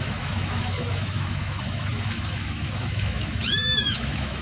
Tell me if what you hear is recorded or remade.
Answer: remade